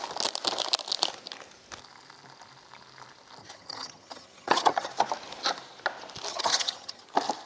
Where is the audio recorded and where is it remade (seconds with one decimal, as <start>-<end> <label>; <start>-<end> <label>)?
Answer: 0.0-3.4 recorded; 3.4-4.9 remade; 4.9-6.3 recorded; 6.3-7.0 remade; 7.0-7.5 recorded

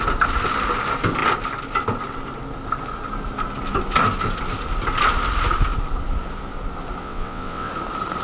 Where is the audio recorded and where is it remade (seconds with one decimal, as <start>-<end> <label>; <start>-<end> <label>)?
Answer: 0.0-7.0 recorded; 7.0-7.7 remade; 7.7-8.2 recorded